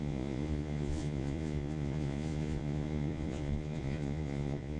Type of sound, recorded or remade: remade